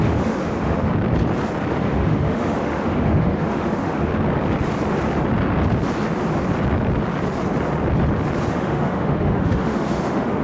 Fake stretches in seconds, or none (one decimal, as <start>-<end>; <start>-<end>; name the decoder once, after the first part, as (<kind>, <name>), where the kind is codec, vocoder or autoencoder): 0.0-0.9 (autoencoder, DAC-VAE); 1.7-4.1; 8.5-10.4